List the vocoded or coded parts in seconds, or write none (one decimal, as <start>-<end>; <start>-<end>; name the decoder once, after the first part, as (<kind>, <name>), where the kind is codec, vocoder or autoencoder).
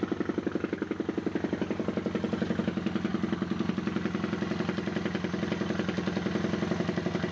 none